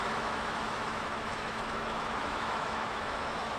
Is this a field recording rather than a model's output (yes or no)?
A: no